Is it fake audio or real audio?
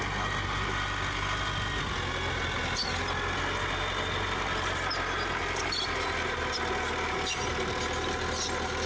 real